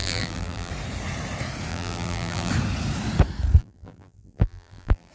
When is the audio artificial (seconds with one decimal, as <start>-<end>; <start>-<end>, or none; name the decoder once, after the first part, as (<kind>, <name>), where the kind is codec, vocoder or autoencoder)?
0.0-0.7 (vocoder, BigVGAN v2); 1.7-2.5; 3.6-5.1